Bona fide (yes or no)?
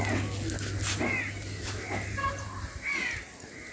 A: yes